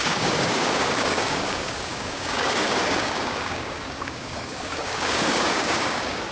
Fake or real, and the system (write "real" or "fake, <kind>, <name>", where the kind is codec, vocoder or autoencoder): fake, codec, DAC